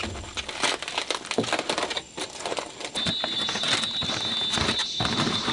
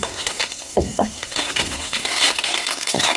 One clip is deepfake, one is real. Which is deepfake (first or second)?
second